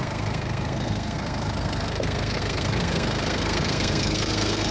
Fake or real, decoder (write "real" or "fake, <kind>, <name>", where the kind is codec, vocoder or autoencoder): fake, codec, SNAC